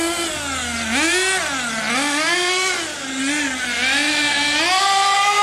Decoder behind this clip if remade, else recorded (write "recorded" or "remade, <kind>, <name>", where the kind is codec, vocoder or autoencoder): recorded